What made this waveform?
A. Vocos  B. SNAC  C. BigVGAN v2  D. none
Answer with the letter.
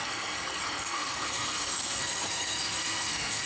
B